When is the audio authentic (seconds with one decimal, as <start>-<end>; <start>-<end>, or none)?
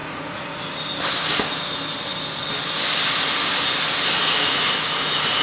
0.6-5.4